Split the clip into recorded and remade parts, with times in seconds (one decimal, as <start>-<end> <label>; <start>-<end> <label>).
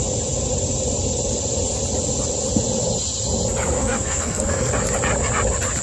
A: 0.0-3.8 recorded; 3.8-4.7 remade; 4.7-5.8 recorded